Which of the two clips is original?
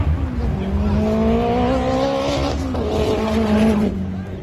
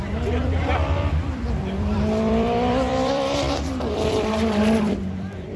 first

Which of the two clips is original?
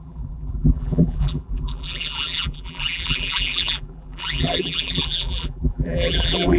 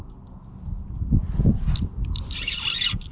second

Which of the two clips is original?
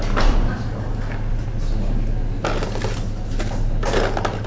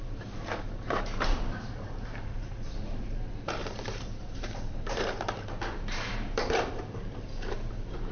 first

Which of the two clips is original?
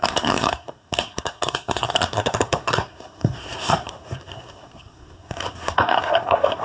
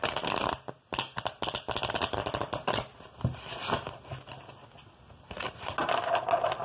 second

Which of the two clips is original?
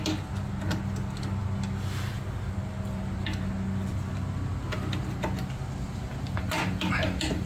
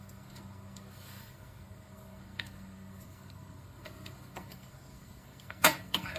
first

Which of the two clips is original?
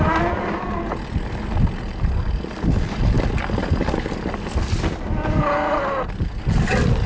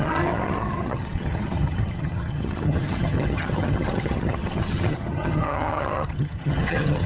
first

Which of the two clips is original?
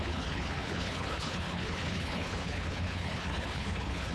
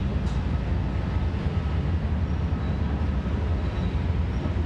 second